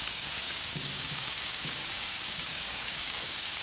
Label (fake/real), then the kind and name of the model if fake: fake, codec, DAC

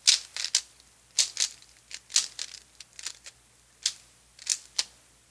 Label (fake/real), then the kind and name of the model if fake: real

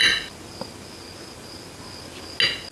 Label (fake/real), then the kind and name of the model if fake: real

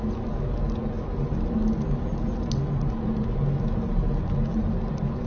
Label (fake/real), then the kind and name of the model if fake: real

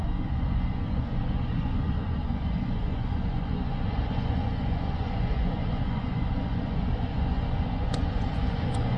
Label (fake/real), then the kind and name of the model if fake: fake, vocoder, Vocos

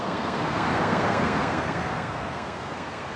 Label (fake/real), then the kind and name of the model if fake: fake, codec, SNAC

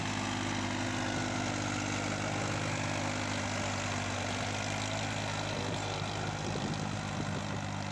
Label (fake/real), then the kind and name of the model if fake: real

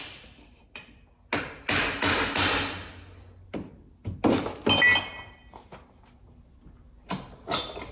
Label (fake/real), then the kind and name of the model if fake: real